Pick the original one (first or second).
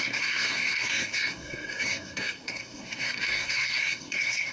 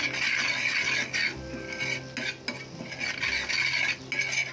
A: second